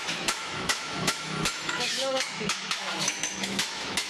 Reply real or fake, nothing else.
fake